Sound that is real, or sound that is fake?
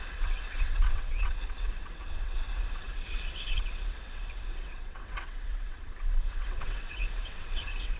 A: fake